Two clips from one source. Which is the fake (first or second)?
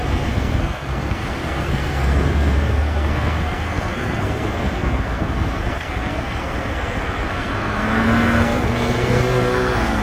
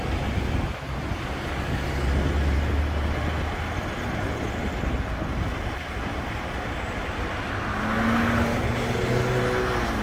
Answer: first